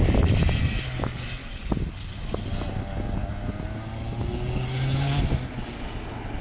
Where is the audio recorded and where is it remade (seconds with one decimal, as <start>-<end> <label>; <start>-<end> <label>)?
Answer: 0.0-6.4 recorded